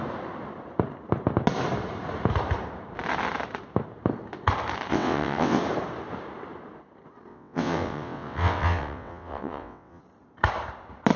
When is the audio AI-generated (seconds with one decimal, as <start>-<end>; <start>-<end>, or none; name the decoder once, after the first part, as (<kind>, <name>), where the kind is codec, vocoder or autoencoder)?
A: 4.9-5.6 (vocoder, WaveNeXt); 7.3-10.0